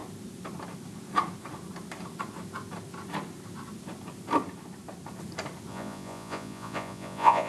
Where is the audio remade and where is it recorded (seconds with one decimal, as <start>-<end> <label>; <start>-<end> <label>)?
0.0-5.7 recorded; 5.7-7.5 remade